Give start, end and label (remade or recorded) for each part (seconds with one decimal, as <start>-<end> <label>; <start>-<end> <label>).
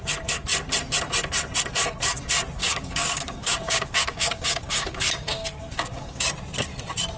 0.0-2.6 recorded; 2.6-6.3 remade; 6.3-7.2 recorded